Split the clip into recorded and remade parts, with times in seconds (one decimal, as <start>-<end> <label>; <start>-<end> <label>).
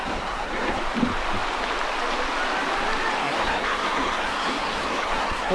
0.0-0.8 remade; 0.8-3.2 recorded; 3.2-5.5 remade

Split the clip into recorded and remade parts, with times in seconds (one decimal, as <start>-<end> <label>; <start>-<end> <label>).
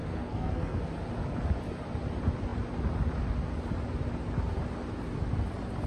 0.0-0.8 remade; 0.8-5.9 recorded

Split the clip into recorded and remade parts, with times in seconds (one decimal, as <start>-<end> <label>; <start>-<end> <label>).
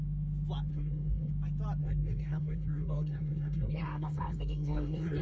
0.0-0.7 recorded; 0.7-1.3 remade; 1.3-1.8 recorded; 1.8-5.2 remade